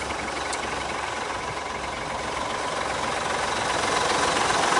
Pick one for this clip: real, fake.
real